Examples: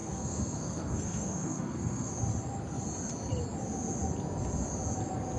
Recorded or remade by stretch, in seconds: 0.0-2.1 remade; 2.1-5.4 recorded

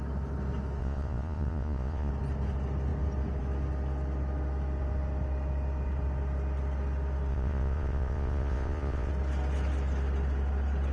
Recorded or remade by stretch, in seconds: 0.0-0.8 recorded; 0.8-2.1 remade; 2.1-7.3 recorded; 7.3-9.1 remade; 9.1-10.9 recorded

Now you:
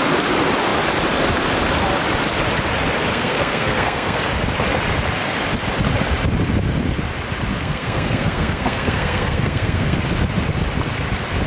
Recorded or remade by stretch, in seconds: 0.0-3.1 recorded; 3.1-4.2 remade; 4.2-7.5 recorded; 7.5-10.0 remade; 10.0-11.5 recorded

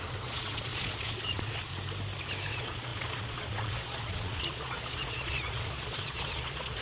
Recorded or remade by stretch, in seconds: 0.0-1.7 remade; 1.7-2.5 recorded; 2.5-6.8 remade

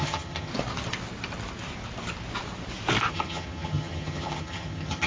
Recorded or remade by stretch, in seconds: 0.0-0.5 remade; 0.5-3.1 recorded; 3.1-5.1 remade

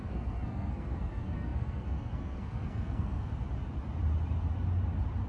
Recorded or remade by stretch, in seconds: 0.0-3.3 remade; 3.3-5.3 recorded